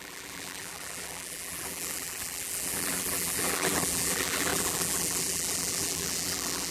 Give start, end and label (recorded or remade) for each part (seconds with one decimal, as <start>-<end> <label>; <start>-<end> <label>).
0.0-6.7 remade